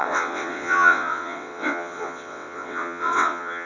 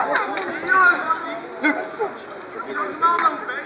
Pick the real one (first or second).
second